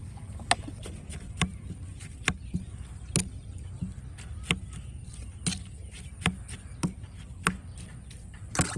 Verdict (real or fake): real